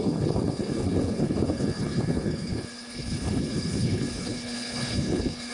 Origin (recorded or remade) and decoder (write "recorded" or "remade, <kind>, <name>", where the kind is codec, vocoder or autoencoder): remade, codec, HILCodec